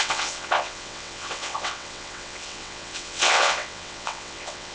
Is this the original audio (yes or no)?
no